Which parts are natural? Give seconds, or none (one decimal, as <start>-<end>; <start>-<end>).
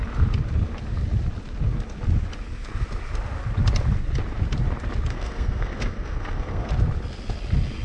0.0-5.1; 6.7-7.8